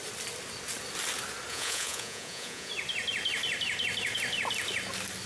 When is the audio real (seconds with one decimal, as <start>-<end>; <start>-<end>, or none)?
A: 0.0-1.5; 2.7-5.3